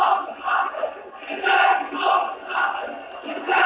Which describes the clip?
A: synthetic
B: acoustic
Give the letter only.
B